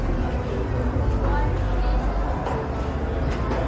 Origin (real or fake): real